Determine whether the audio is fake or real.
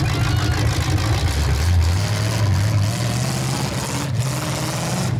real